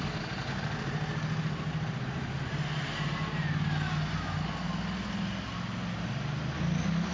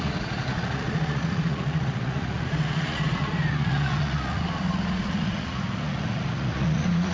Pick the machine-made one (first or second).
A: second